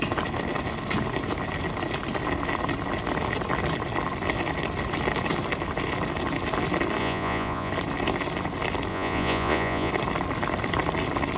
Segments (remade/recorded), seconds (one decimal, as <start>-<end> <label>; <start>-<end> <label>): 0.0-7.0 recorded; 7.0-7.7 remade; 7.7-8.9 recorded; 8.9-9.9 remade; 9.9-11.4 recorded